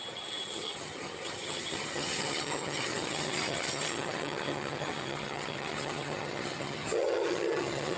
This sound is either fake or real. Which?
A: fake